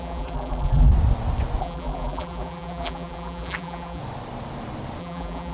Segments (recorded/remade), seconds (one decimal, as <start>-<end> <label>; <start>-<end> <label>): 0.0-0.9 remade; 0.9-1.6 recorded; 1.6-4.0 remade; 4.0-5.0 recorded; 5.0-5.5 remade